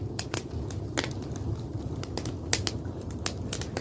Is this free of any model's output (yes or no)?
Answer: yes